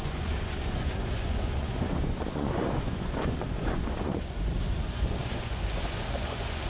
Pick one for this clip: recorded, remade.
remade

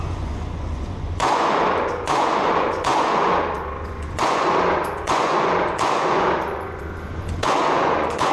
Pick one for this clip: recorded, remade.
remade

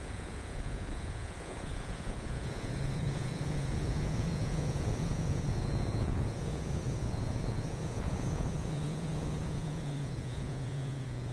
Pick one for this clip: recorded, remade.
remade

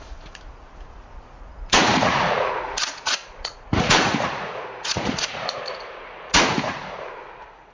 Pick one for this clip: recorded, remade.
remade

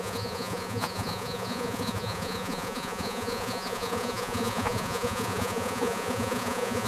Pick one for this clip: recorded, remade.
remade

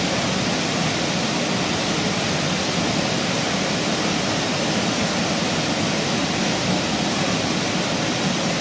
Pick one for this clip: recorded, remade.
recorded